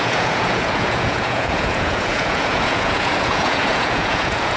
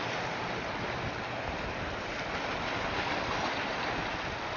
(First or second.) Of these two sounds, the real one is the second